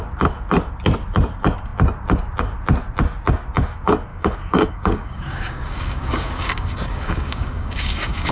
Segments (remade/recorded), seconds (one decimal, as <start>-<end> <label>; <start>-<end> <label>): 0.0-4.1 recorded; 4.1-8.3 remade